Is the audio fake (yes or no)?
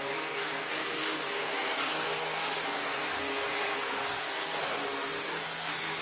yes